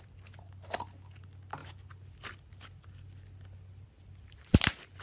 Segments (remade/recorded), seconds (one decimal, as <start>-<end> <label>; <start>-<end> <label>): 0.0-5.0 recorded